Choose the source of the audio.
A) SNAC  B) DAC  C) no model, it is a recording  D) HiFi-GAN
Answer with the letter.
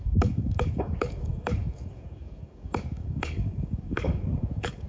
B